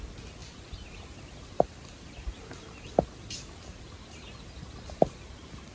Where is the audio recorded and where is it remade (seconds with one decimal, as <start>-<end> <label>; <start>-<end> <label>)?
0.0-0.4 recorded; 0.4-3.8 remade; 3.8-5.7 recorded